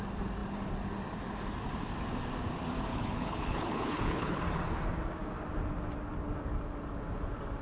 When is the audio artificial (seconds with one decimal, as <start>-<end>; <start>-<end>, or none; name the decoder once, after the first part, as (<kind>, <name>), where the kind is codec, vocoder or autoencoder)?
2.9-4.4 (codec, HILCodec)